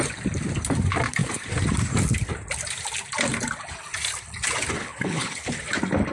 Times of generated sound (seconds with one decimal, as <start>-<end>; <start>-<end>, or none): 4.8-5.5